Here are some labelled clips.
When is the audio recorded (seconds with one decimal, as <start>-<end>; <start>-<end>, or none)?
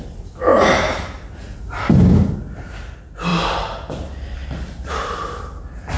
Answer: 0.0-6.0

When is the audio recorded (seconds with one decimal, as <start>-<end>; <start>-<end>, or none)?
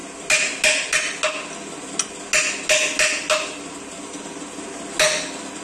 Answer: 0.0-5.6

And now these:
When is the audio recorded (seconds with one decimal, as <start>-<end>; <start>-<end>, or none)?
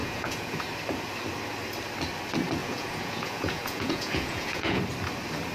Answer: 0.6-2.6; 4.8-5.5